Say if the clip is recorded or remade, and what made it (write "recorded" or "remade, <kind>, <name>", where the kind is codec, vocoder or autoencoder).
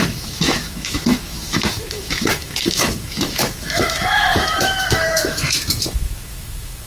remade, autoencoder, DAC-VAE